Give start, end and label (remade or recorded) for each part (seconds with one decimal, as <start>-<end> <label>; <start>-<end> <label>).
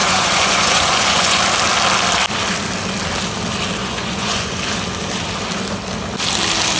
0.0-1.4 remade; 1.4-3.8 recorded; 3.8-4.6 remade; 4.6-6.8 recorded